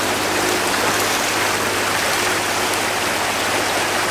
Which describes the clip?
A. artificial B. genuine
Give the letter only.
B